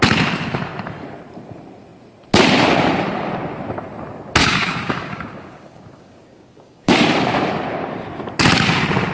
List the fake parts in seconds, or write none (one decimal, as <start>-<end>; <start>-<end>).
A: 4.4-6.9